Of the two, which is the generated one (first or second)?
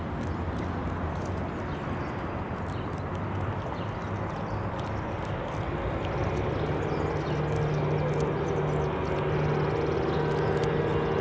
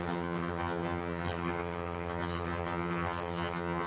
second